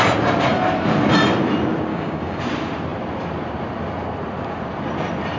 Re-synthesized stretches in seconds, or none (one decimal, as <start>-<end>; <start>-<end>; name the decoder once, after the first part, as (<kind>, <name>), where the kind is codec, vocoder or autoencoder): 1.9-2.4 (codec, DAC)